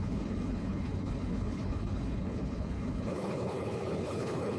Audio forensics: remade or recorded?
remade